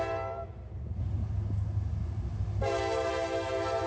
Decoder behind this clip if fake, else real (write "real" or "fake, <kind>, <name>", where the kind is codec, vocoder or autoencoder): real